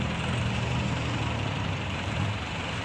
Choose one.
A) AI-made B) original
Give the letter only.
A